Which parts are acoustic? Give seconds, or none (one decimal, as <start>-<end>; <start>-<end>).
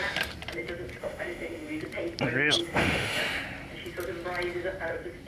0.0-1.0; 1.8-2.6; 3.2-5.3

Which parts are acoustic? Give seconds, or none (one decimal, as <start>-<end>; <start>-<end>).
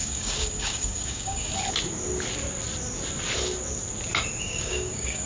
1.5-4.4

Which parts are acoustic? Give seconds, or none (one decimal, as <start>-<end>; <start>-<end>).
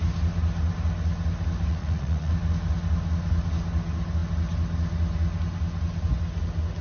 0.0-1.7; 2.3-6.8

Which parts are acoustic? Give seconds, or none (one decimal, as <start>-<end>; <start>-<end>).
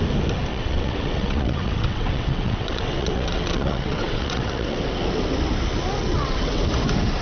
0.0-0.5; 4.8-6.0; 6.7-7.2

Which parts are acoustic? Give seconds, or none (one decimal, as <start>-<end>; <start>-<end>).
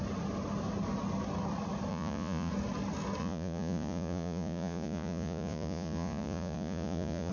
0.0-1.9; 2.5-3.2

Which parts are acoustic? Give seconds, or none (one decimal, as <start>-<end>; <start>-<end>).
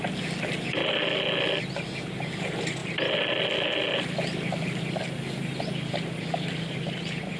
0.0-7.4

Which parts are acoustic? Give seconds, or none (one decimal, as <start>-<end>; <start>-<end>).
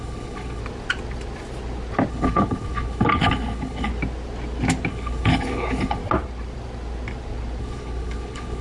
0.6-2.1; 3.9-4.9; 6.0-7.6